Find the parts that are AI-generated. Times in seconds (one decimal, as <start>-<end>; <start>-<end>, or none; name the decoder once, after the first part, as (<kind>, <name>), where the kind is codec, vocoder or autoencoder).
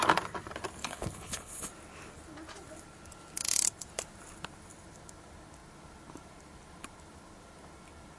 0.8-1.7 (codec, HILCodec)